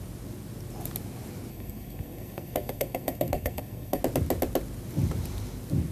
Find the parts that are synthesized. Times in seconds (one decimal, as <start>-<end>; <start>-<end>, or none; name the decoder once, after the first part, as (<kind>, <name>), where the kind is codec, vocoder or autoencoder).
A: 1.5-4.0 (codec, SNAC)